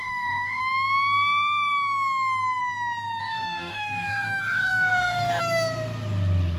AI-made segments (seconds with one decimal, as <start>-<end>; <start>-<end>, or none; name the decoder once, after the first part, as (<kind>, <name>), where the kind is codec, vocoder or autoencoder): 0.0-0.6 (codec, DAC); 3.2-5.4